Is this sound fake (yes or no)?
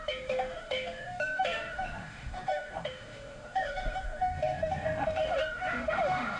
yes